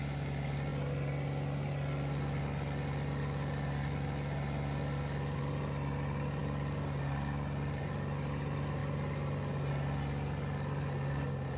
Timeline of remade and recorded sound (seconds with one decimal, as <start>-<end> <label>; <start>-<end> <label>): 0.0-11.6 recorded